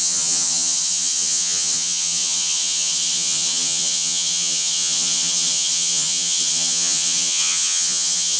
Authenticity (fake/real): fake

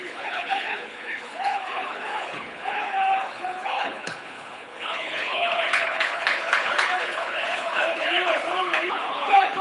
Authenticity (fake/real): fake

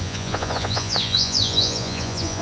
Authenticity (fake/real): fake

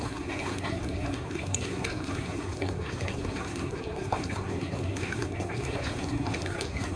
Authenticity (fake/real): fake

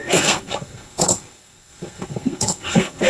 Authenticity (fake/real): fake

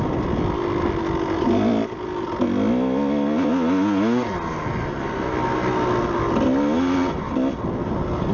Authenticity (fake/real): real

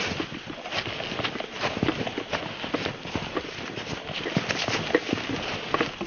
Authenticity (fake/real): real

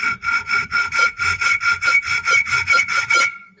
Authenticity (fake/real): fake